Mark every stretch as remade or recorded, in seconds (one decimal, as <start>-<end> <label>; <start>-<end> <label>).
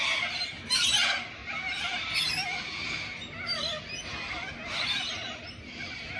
0.0-1.4 remade; 1.4-5.1 recorded; 5.1-6.2 remade